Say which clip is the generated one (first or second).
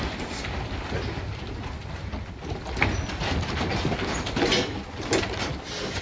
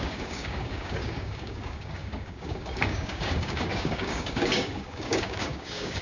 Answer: second